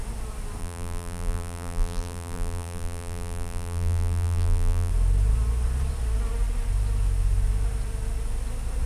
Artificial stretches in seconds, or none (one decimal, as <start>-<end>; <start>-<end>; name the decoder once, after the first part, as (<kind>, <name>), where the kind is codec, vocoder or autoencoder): 0.6-4.9 (vocoder, BigVGAN v2)